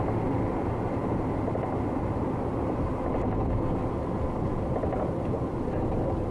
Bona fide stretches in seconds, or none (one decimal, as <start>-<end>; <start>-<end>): 0.0-6.3